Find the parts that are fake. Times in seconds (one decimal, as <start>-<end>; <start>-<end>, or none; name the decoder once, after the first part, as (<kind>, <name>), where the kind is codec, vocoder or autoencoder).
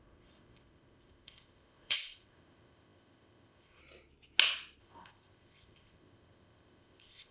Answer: 0.0-3.8 (codec, ZipCodec); 4.8-7.3